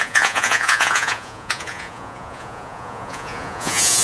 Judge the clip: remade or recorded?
remade